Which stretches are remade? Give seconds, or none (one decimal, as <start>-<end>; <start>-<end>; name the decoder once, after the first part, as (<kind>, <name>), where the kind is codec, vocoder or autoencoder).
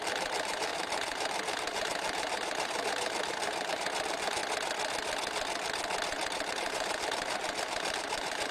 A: 0.0-4.4 (vocoder, BigVGAN v2); 6.5-8.5